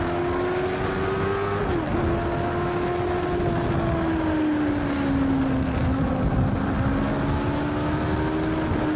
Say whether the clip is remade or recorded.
recorded